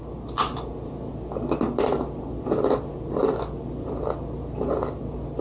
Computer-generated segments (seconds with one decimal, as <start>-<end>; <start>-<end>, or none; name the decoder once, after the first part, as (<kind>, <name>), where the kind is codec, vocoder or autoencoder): none